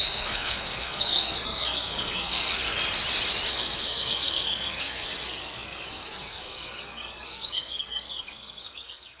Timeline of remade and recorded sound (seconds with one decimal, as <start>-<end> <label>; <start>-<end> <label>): 0.0-2.7 remade; 2.7-3.5 recorded; 3.5-9.2 remade